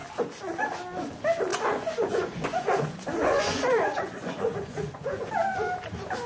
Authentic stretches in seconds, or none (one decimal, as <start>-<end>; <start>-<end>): 0.0-1.5; 5.3-6.3